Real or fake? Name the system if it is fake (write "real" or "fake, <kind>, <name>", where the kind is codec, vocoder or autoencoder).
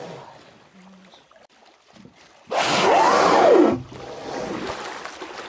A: real